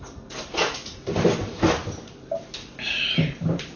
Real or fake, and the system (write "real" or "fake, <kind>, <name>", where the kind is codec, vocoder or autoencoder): real